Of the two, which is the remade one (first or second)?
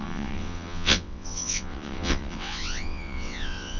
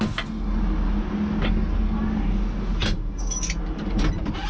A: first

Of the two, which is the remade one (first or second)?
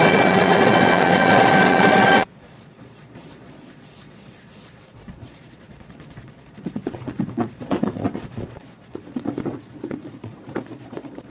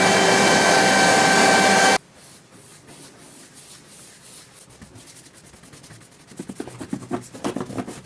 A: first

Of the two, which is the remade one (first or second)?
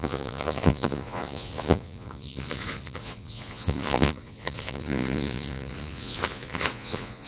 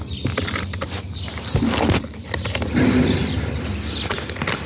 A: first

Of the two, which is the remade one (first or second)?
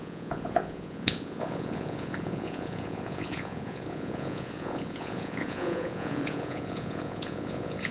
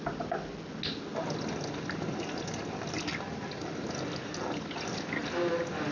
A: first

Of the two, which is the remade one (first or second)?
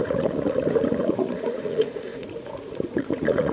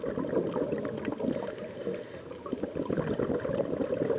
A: first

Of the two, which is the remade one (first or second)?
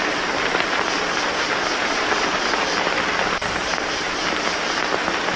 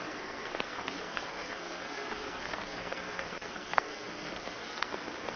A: second